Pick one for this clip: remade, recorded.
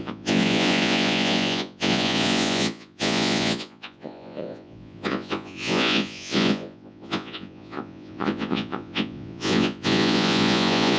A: remade